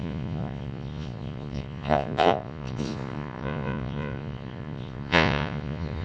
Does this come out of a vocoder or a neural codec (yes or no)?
yes